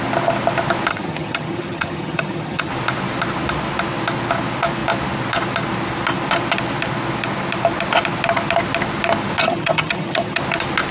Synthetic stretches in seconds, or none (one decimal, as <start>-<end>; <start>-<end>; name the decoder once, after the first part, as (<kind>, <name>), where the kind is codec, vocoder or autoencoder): 0.9-2.7 (vocoder, HiFi-GAN); 9.4-10.4